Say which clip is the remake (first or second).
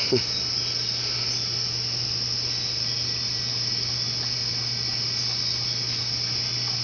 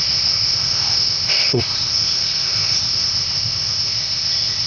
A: second